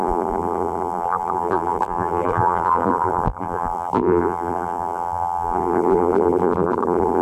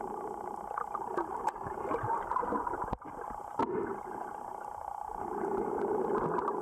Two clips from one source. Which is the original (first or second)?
second